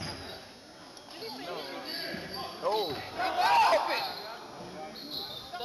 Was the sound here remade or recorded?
recorded